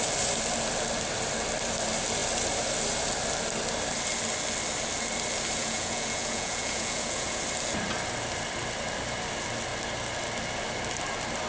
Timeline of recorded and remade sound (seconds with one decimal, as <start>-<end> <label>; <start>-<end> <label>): 0.0-5.6 recorded; 5.6-7.4 remade; 7.4-11.5 recorded